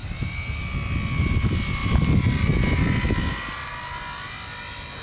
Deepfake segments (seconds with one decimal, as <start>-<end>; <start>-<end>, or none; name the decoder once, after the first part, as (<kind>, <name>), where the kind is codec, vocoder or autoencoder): none